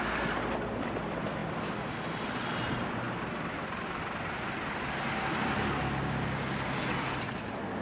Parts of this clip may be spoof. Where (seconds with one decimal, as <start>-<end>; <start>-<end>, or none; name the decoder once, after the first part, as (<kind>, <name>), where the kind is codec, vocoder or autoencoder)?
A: none